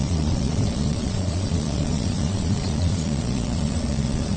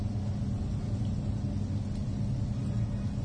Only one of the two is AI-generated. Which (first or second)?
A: first